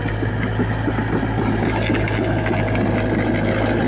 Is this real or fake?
real